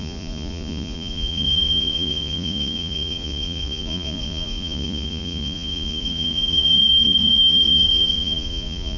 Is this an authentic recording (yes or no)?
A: no